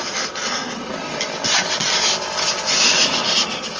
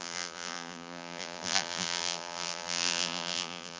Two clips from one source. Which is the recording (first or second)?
first